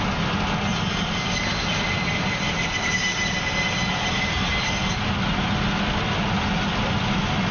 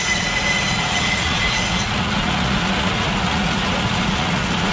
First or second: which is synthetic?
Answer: second